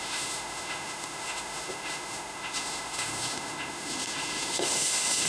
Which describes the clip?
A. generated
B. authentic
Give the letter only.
A